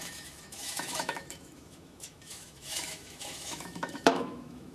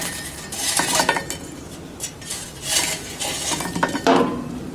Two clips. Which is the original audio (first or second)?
second